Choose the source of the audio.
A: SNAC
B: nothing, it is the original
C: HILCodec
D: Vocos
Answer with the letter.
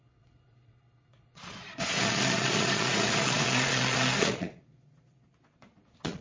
D